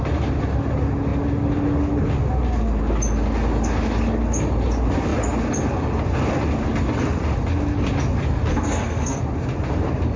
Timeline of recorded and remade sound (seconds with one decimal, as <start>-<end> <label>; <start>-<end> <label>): 0.0-8.5 recorded; 8.5-9.2 remade; 9.2-10.2 recorded